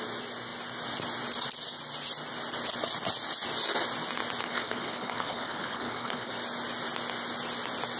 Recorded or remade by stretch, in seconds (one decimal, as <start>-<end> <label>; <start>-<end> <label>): 0.0-4.4 recorded; 4.4-6.3 remade; 6.3-8.0 recorded